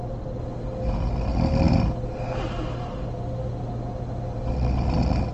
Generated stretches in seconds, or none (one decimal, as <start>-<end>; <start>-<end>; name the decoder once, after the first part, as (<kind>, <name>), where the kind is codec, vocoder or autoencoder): none